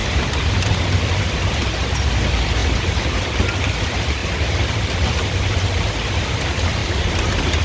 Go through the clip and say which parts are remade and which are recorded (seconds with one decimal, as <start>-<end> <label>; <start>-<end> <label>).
0.0-2.6 recorded; 2.6-3.6 remade; 3.6-4.2 recorded; 4.2-4.9 remade; 4.9-6.8 recorded; 6.8-7.6 remade